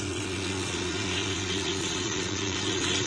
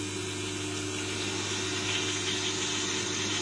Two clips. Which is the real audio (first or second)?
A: second